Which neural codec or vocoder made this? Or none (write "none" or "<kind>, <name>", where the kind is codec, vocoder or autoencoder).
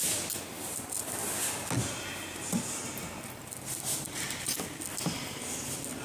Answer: none